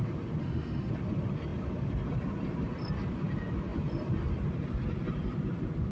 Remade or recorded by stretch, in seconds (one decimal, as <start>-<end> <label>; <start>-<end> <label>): 0.0-0.4 recorded; 0.4-0.9 remade; 0.9-5.9 recorded